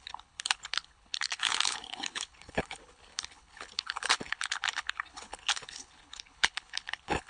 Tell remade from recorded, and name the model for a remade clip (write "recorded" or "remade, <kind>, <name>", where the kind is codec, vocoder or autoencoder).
remade, codec, HILCodec